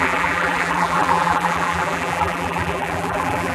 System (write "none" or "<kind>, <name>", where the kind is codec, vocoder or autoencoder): vocoder, BigVGAN v2